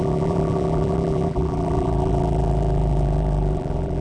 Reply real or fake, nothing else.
fake